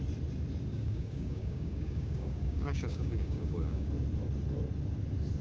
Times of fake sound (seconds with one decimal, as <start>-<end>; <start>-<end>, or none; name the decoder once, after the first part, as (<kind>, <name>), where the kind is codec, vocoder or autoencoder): 0.7-3.9 (codec, DAC)